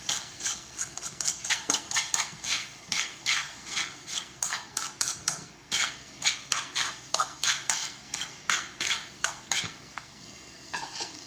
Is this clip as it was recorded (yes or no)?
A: no